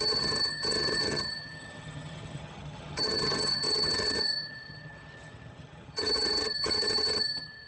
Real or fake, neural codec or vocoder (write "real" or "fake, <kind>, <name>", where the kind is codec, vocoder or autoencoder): fake, vocoder, HiFi-GAN